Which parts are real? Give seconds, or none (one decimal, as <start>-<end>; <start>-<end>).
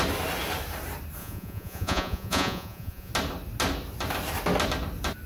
0.0-1.2; 3.1-5.3